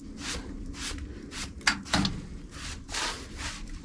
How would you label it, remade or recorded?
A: recorded